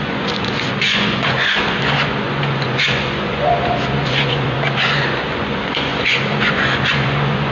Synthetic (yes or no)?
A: yes